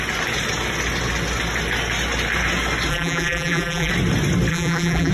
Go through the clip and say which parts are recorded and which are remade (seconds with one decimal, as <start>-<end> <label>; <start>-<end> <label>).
0.0-2.9 recorded; 2.9-3.9 remade; 3.9-4.5 recorded; 4.5-5.1 remade